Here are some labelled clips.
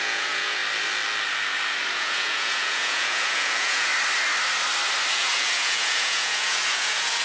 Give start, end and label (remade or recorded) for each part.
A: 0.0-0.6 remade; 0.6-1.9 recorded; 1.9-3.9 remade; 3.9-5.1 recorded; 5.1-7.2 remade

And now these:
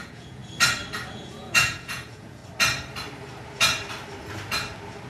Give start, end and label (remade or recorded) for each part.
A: 0.0-0.4 remade; 0.4-1.1 recorded; 1.1-2.4 remade; 2.4-5.1 recorded

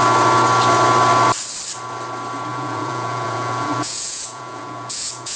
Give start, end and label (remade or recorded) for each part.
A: 0.0-2.5 recorded; 2.5-5.4 remade

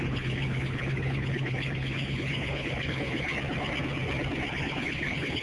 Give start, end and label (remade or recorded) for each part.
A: 0.0-3.3 remade; 3.3-4.5 recorded; 4.5-5.4 remade

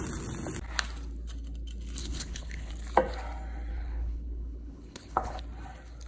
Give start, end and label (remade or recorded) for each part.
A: 0.0-2.0 recorded; 2.0-2.7 remade; 2.7-3.7 recorded; 3.7-5.4 remade; 5.4-6.1 recorded

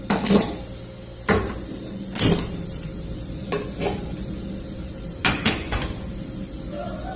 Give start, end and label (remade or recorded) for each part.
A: 0.0-5.2 recorded; 5.2-6.1 remade; 6.1-7.2 recorded

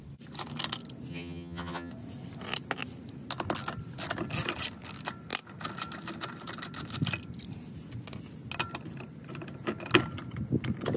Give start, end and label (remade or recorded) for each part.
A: 0.0-1.1 recorded; 1.1-1.9 remade; 1.9-11.0 recorded